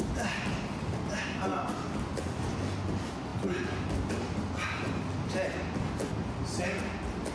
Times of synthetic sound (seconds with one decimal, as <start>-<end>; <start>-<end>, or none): none